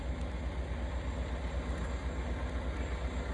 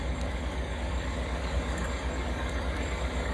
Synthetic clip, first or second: second